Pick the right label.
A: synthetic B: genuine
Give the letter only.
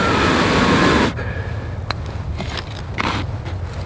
B